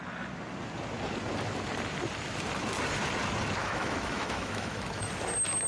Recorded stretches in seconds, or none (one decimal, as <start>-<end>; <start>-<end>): 0.0-3.6; 5.1-5.7